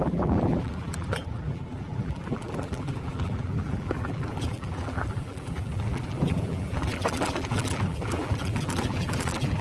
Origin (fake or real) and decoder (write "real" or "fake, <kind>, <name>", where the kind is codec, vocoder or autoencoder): fake, vocoder, BigVGAN v2